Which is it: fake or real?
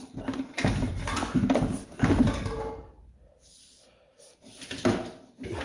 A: real